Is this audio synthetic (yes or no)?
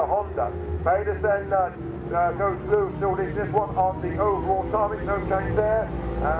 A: no